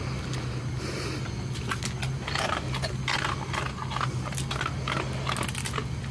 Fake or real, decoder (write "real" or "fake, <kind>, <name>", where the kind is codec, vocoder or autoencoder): real